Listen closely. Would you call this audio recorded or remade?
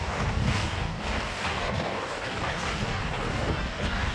remade